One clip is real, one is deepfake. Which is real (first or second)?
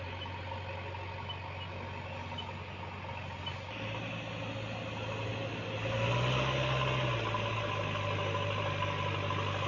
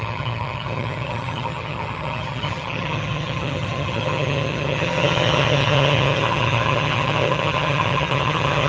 first